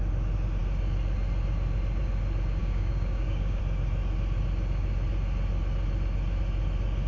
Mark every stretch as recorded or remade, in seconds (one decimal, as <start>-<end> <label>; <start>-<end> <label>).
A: 0.0-2.6 recorded; 2.6-3.6 remade; 3.6-7.1 recorded